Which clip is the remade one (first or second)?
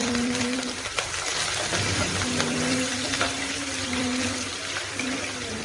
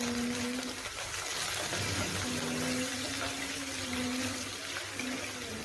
first